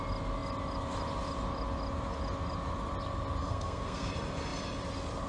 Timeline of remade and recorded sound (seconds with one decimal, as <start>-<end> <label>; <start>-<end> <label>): 0.0-3.4 recorded; 3.4-4.1 remade; 4.1-5.3 recorded